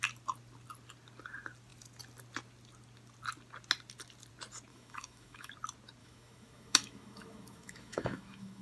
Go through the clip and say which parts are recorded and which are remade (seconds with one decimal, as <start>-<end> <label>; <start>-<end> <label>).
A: 0.0-4.7 recorded; 4.7-5.5 remade; 5.5-6.0 recorded; 6.0-8.6 remade